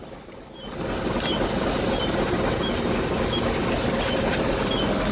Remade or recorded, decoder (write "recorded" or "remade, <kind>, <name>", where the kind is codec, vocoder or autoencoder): recorded